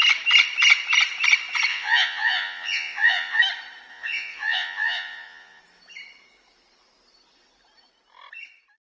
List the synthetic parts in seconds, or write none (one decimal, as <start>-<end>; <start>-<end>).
1.7-3.4; 3.9-5.6